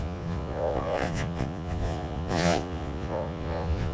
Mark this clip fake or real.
fake